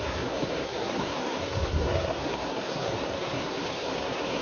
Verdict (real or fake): fake